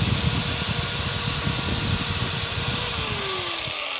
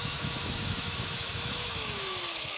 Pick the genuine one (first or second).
first